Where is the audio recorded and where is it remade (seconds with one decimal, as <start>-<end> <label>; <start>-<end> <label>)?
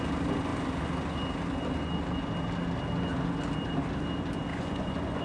0.0-4.5 recorded; 4.5-5.2 remade